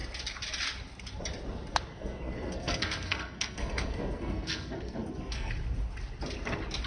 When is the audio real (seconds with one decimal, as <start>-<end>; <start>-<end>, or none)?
0.0-1.9; 5.5-6.9

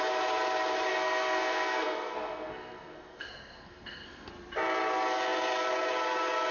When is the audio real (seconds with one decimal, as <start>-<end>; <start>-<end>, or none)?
0.0-0.9; 4.3-6.5

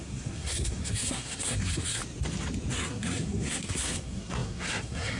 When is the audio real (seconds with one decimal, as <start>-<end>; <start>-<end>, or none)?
2.0-2.7

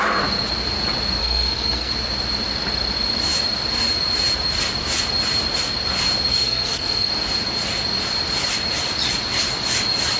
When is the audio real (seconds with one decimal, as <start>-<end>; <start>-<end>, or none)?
0.0-1.2; 1.9-6.3; 7.1-10.2

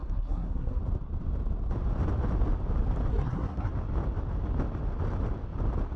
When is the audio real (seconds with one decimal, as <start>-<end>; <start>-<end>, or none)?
0.8-3.1; 3.7-6.0